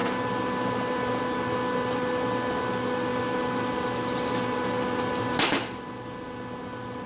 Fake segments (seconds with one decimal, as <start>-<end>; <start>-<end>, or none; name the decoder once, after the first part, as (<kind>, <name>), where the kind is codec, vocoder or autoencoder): 0.0-1.2 (vocoder, BigVGAN v2); 3.1-7.1